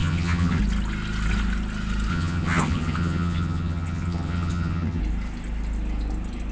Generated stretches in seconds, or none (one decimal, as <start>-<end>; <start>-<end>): 0.0-0.6; 2.1-5.0